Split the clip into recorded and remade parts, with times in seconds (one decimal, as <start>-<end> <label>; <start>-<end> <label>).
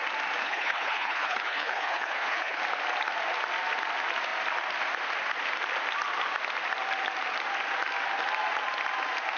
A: 0.0-0.4 recorded; 0.4-2.6 remade; 2.6-9.4 recorded